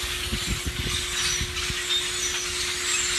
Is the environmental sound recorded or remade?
recorded